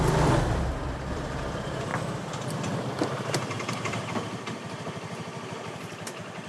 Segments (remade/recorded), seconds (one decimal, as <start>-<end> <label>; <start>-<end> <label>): 0.0-6.5 remade